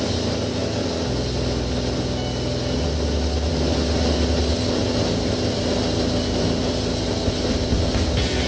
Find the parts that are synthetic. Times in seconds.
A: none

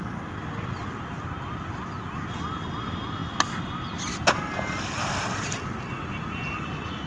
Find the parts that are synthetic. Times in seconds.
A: none

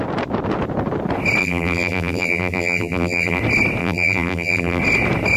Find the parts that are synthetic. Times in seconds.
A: 1.4-3.4 (vocoder, BigVGAN v2); 3.8-4.8

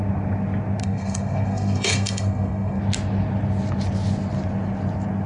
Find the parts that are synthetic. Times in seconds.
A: 0.8-2.8 (codec, SNAC)

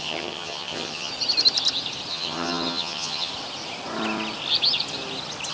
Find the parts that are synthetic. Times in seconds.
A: 0.0-1.1 (vocoder, HiFi-GAN); 2.1-3.3

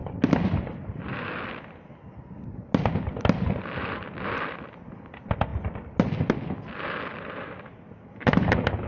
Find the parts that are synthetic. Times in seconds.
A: none

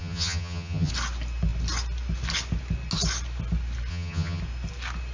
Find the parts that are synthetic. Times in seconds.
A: 0.0-0.9 (vocoder, HiFi-GAN); 3.9-4.4